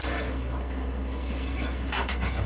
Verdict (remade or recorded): remade